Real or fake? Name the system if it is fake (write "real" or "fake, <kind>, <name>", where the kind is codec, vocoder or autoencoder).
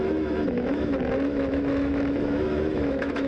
fake, autoencoder, DAC-VAE